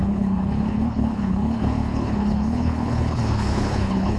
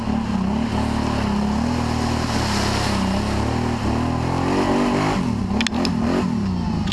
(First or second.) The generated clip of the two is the first